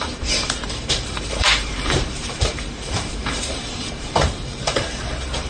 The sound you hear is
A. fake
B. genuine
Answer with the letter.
A